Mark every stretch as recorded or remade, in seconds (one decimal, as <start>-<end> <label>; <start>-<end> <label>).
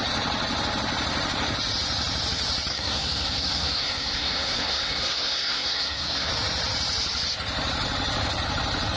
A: 0.0-2.7 recorded; 2.7-6.3 remade; 6.3-9.0 recorded